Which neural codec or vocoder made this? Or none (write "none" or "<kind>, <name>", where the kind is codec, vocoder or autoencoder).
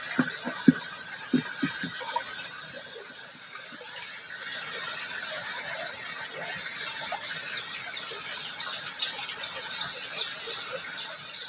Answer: none